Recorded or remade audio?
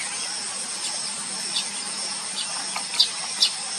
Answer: recorded